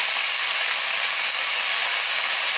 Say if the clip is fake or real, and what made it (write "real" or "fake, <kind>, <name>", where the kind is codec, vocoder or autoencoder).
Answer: real